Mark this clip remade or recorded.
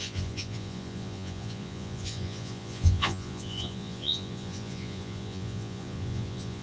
remade